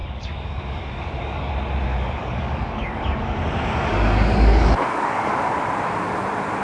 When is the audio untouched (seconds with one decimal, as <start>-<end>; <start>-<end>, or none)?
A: 1.5-1.9; 3.4-3.9; 5.3-6.6